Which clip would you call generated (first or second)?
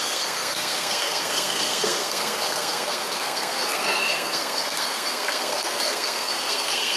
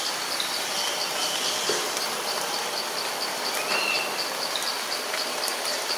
first